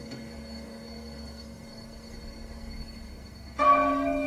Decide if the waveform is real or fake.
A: fake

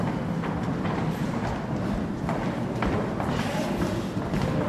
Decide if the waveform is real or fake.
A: real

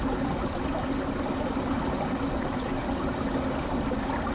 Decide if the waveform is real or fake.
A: real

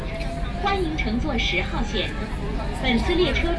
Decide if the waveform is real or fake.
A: real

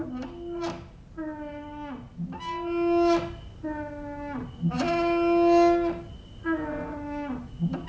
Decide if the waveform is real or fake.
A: real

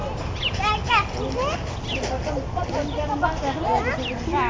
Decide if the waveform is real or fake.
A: real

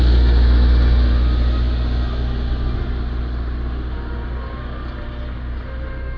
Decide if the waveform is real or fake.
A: real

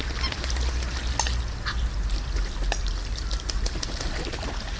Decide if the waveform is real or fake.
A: real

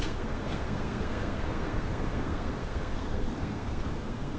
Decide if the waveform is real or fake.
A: fake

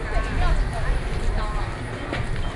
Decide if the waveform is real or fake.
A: real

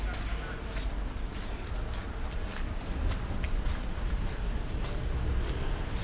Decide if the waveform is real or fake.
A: real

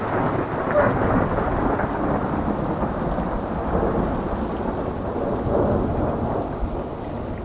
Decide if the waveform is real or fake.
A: real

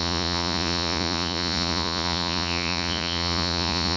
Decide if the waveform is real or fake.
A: fake